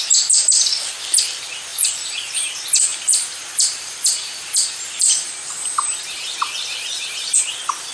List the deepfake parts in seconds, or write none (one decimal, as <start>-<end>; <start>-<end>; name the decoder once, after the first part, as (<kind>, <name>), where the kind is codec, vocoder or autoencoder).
1.7-2.5 (vocoder, BigVGAN v2); 2.9-7.4